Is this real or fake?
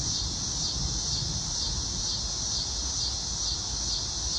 real